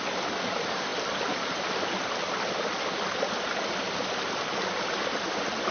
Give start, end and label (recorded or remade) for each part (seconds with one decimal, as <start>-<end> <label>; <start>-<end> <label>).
0.0-5.7 recorded